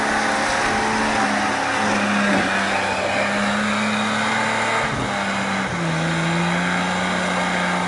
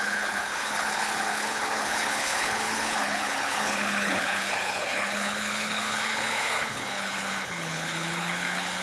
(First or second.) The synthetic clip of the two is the second